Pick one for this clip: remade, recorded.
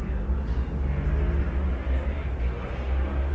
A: recorded